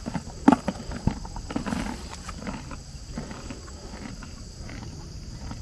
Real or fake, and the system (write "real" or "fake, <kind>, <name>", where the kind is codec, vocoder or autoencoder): real